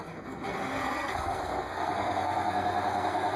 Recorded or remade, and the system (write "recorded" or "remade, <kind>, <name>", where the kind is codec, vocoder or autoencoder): remade, codec, SNAC